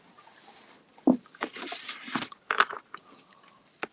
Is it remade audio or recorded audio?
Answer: recorded